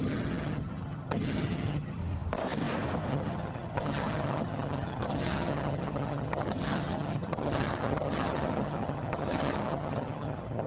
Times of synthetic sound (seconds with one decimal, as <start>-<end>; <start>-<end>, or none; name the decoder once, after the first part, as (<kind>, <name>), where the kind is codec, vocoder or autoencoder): 0.0-2.0 (vocoder, HiFi-GAN); 3.1-10.7